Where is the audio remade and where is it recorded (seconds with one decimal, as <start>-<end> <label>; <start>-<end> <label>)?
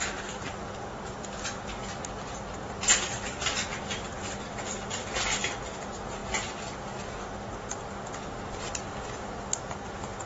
0.0-10.3 recorded